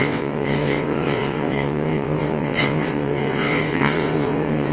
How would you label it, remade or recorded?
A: remade